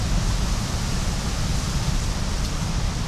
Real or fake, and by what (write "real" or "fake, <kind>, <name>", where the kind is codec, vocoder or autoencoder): real